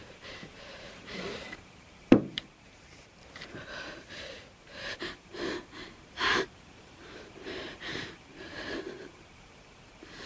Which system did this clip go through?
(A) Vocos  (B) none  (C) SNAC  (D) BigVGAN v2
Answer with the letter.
D